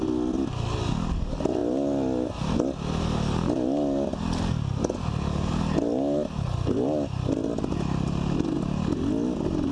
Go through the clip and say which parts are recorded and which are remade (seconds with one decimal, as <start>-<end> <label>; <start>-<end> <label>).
0.0-9.7 recorded